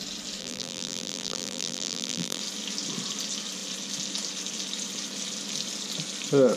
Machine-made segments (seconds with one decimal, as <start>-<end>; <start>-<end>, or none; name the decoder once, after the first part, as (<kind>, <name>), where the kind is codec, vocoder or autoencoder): 0.4-2.4 (vocoder, BigVGAN v2)